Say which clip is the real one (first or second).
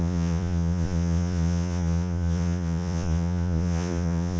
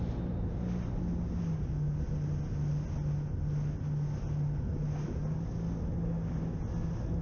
second